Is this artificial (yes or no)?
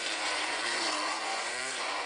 yes